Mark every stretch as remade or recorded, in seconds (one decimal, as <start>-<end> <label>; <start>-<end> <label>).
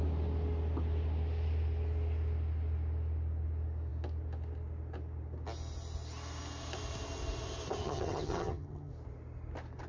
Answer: 0.0-7.8 recorded; 7.8-8.9 remade; 8.9-9.9 recorded